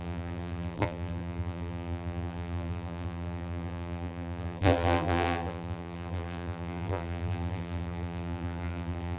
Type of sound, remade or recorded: remade